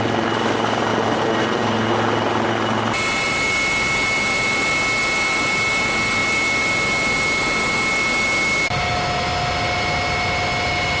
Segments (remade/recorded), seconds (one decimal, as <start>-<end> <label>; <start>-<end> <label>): 0.0-11.0 recorded